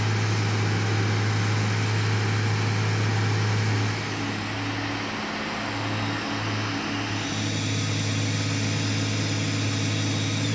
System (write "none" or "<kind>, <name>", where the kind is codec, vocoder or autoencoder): none